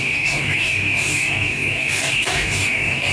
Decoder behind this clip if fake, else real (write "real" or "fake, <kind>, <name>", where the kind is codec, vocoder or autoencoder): fake, codec, DAC